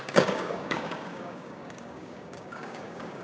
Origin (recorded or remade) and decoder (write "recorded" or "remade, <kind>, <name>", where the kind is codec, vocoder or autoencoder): remade, codec, DAC